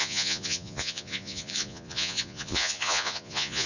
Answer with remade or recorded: remade